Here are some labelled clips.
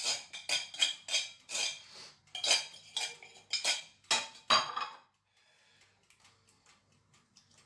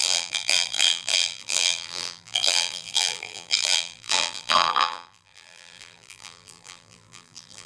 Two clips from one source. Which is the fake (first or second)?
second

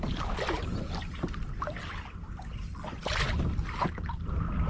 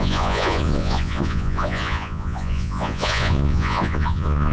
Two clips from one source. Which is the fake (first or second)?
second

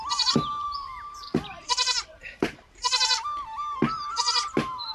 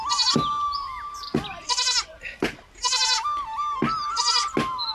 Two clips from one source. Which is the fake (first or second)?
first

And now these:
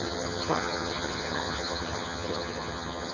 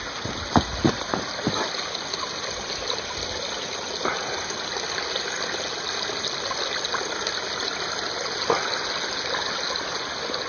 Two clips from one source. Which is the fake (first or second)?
first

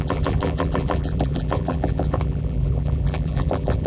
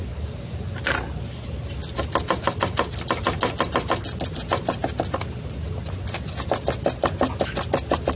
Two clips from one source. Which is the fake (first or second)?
first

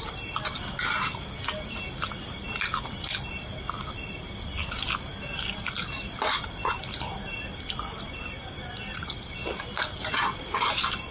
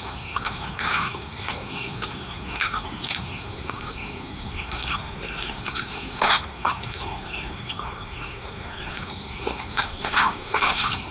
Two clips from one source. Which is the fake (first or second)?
second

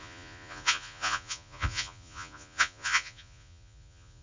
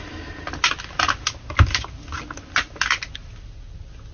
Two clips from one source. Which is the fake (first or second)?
first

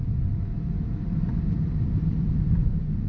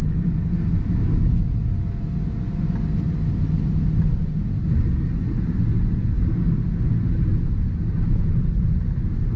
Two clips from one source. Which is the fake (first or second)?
first